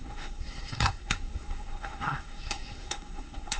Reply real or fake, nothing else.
fake